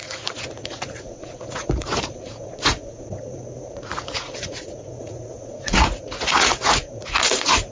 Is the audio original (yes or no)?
no